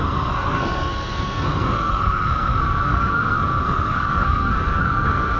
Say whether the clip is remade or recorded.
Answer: remade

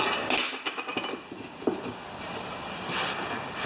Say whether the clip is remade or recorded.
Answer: recorded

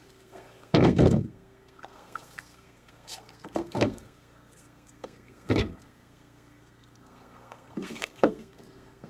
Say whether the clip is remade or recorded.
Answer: remade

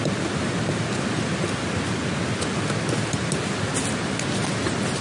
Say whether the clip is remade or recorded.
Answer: recorded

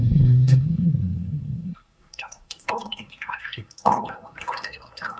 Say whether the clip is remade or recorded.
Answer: remade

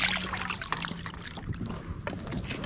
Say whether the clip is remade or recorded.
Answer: recorded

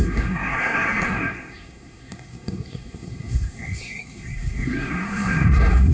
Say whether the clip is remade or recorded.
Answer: remade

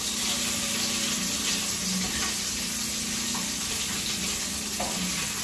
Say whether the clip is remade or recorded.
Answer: recorded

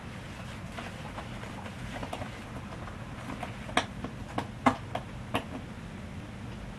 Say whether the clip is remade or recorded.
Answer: recorded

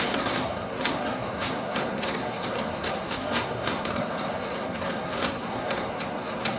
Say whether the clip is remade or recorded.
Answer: remade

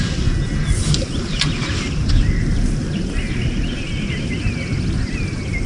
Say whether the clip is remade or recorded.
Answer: recorded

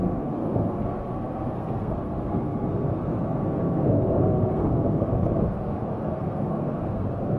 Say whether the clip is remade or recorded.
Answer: remade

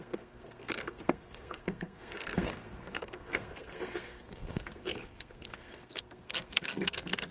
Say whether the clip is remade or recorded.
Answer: remade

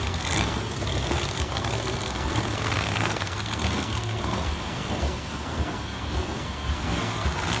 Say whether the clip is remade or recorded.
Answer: remade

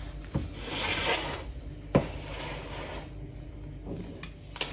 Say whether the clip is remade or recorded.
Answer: recorded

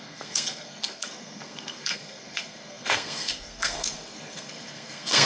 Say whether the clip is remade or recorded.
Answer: remade